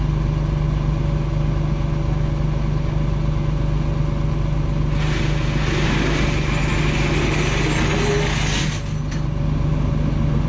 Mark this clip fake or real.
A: real